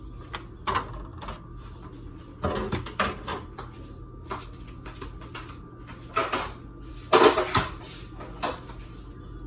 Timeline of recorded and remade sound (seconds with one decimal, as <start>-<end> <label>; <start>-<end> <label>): 0.0-9.5 recorded